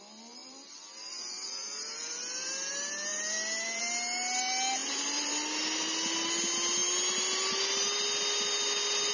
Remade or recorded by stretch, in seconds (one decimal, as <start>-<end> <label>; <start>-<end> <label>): 0.0-0.4 recorded; 0.4-2.7 remade; 2.7-3.1 recorded; 3.1-3.8 remade; 3.8-4.8 recorded; 4.8-5.3 remade; 5.3-9.1 recorded